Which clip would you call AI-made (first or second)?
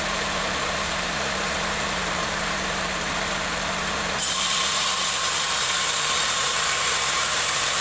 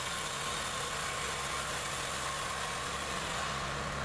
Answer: first